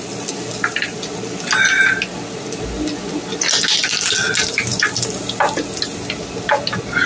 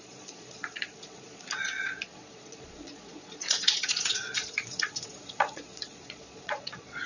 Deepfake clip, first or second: second